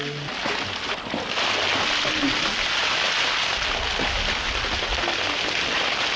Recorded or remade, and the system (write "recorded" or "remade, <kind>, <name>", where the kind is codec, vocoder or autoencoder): recorded